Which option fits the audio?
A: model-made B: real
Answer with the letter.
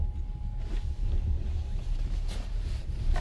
B